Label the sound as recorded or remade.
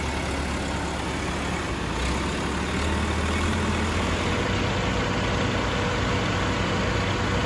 recorded